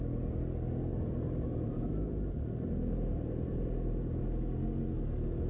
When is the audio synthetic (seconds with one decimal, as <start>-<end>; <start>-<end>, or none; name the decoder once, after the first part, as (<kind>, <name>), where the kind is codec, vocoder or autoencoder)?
0.9-4.2 (vocoder, BigVGAN v2)